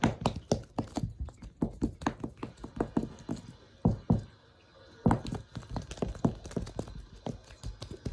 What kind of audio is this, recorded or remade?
recorded